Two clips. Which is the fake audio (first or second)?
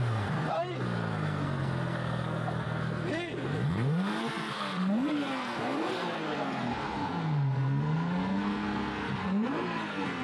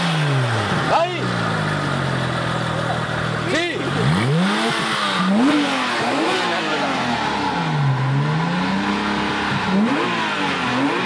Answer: first